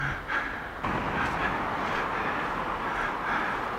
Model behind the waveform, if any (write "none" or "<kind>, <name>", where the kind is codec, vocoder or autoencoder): none